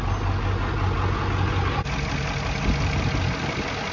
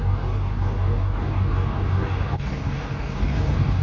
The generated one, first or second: second